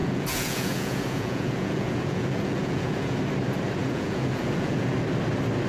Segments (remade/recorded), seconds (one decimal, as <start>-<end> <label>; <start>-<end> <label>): 0.0-3.2 remade; 3.2-3.8 recorded; 3.8-4.9 remade; 4.9-5.7 recorded